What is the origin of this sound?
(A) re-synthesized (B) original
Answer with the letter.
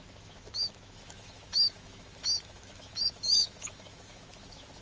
A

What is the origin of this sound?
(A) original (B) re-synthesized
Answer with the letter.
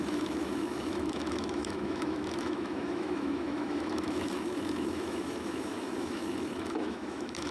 B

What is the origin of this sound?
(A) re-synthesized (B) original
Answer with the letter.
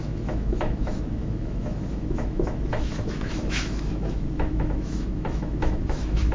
A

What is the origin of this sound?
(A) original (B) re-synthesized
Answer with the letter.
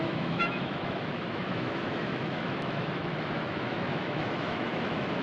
B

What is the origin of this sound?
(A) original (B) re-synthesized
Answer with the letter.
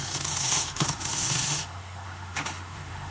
B